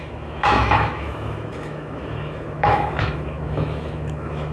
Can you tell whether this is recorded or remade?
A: remade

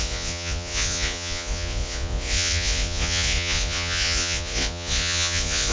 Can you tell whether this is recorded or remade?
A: remade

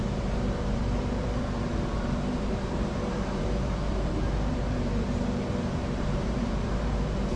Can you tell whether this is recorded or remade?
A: remade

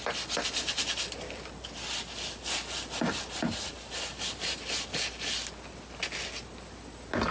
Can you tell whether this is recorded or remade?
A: recorded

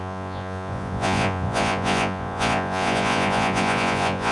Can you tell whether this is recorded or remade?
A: remade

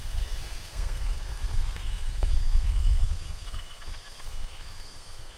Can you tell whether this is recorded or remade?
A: remade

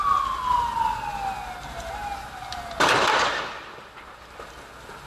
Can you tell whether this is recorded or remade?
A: recorded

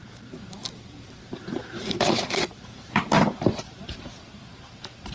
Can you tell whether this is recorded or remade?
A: remade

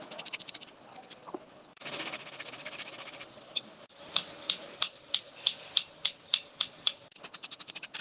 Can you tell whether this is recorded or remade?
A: recorded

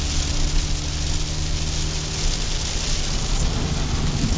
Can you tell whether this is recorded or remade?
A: recorded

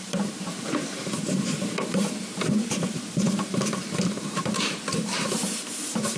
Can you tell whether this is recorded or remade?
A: remade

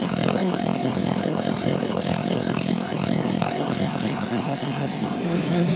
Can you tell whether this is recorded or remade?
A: remade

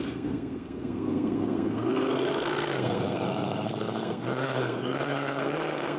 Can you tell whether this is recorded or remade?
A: remade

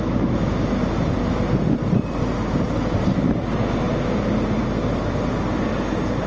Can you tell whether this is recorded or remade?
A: recorded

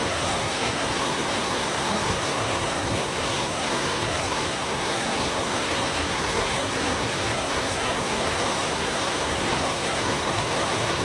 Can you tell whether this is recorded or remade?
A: remade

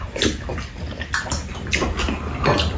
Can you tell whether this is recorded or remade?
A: recorded